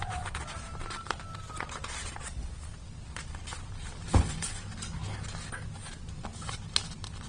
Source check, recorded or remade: recorded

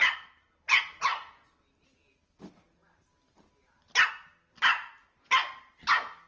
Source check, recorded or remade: recorded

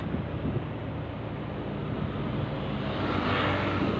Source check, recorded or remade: recorded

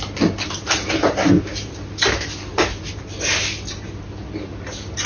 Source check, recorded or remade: recorded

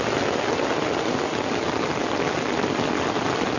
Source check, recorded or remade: recorded